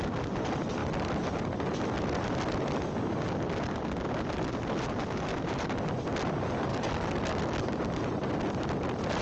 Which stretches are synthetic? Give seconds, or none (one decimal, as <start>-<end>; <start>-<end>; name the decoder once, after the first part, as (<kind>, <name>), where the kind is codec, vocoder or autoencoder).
6.7-7.8 (codec, DAC)